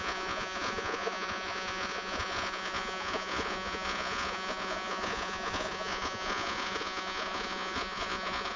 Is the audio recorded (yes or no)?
no